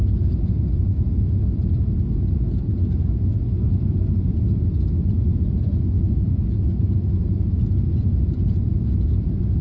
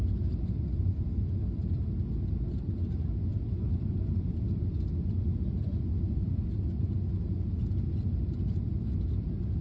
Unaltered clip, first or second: second